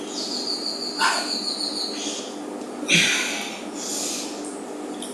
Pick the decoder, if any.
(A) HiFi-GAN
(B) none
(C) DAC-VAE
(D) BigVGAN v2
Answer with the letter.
B